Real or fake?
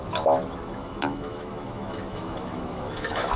fake